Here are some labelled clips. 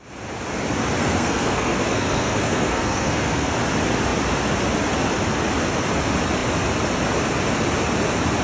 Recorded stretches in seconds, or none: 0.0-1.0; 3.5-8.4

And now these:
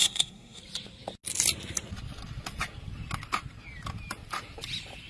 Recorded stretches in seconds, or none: 0.6-5.1

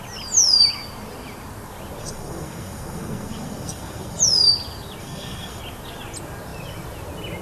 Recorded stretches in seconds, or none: 0.0-2.0; 4.2-5.0; 5.6-7.4

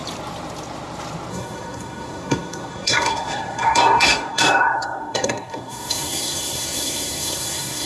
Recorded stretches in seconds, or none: 0.0-1.3